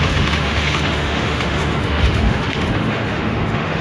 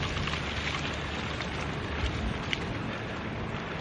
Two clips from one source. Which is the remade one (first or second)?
first